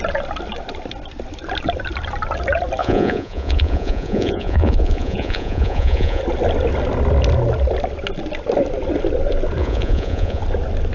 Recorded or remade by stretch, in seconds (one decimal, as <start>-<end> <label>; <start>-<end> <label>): 0.0-2.8 recorded; 2.8-6.2 remade; 6.2-9.6 recorded; 9.6-10.4 remade; 10.4-10.9 recorded